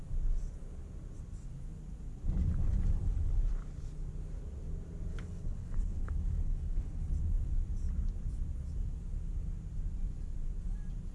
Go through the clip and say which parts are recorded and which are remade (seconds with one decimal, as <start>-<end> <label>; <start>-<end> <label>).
0.0-5.1 recorded; 5.1-7.1 remade; 7.1-11.1 recorded